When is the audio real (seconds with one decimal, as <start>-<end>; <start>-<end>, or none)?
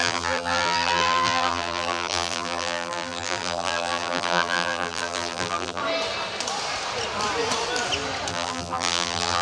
5.8-8.3